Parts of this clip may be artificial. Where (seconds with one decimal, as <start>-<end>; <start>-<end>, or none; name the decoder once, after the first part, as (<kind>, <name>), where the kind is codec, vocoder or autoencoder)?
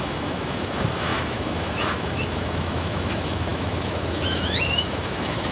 0.0-5.5 (autoencoder, DAC-VAE)